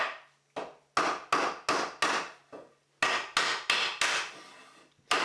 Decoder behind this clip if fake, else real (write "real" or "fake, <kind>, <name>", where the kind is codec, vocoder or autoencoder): real